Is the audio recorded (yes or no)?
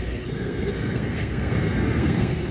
no